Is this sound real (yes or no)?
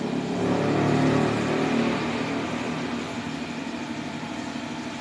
yes